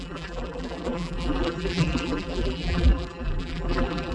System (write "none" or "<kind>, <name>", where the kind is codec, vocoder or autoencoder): vocoder, BigVGAN v2